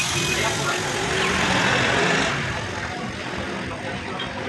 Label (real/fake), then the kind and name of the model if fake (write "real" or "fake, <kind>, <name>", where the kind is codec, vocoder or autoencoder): real